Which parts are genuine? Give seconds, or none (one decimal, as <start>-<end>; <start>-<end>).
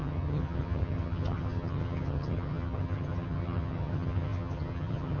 none